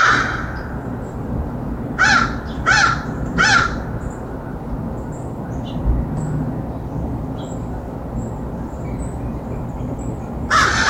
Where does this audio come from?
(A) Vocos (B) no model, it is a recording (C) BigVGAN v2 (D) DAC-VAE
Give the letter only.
B